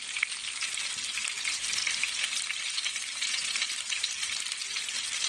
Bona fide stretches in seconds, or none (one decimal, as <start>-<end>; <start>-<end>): 0.0-1.2; 4.4-5.3